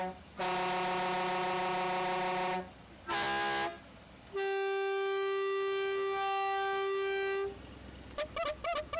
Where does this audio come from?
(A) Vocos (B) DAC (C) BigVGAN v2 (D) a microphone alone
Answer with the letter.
D